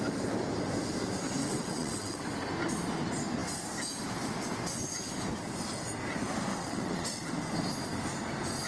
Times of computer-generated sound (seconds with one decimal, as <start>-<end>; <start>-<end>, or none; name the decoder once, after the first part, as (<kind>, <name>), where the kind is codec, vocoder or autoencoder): 1.4-2.2 (vocoder, WaveNeXt); 6.5-7.3